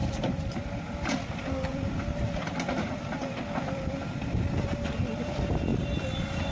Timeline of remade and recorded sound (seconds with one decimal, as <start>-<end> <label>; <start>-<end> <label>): 0.0-0.8 remade; 0.8-1.7 recorded; 1.7-5.3 remade; 5.3-5.7 recorded; 5.7-6.5 remade